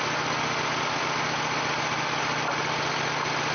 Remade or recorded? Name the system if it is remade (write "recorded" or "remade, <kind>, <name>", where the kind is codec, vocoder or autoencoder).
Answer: recorded